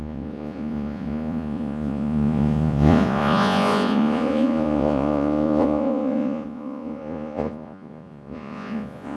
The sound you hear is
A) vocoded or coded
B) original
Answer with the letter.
A